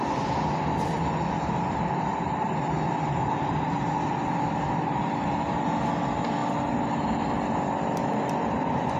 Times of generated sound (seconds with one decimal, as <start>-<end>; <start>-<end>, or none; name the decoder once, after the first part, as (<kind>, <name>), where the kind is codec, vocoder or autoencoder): 6.4-7.3 (vocoder, BigVGAN v2)